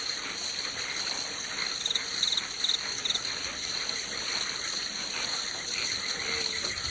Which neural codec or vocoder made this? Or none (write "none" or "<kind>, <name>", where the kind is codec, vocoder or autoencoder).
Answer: none